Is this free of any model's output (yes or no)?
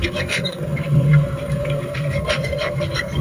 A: no